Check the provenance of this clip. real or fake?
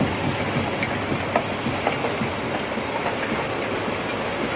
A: real